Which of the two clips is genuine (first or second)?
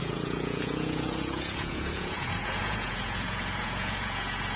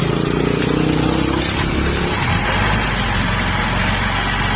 second